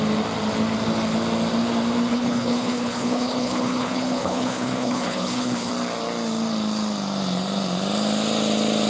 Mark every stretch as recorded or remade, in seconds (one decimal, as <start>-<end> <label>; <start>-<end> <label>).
0.0-2.1 recorded; 2.1-5.7 remade; 5.7-8.9 recorded